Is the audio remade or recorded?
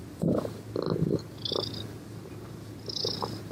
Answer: recorded